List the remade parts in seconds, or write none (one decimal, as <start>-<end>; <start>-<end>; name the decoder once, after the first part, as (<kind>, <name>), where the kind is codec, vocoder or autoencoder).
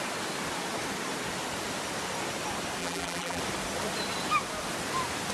2.8-3.4 (vocoder, BigVGAN v2)